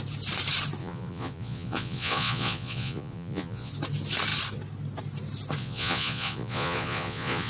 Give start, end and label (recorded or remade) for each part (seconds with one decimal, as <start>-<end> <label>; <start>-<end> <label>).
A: 0.0-0.8 recorded; 0.8-3.7 remade; 3.7-5.6 recorded; 5.6-7.5 remade